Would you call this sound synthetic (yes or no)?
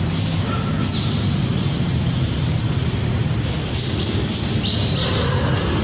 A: no